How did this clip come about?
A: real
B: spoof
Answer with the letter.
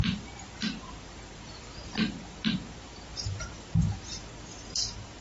A